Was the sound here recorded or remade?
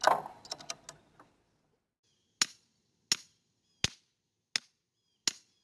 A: recorded